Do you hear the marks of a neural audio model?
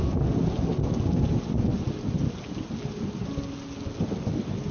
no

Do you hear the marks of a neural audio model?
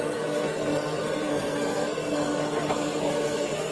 yes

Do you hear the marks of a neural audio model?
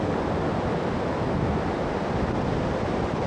no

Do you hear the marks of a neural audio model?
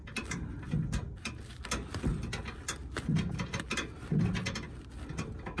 no